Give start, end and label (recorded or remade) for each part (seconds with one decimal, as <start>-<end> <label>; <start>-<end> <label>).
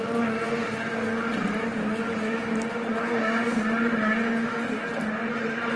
0.0-5.8 recorded